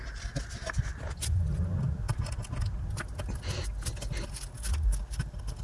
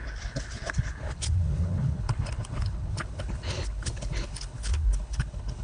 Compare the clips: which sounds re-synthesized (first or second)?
second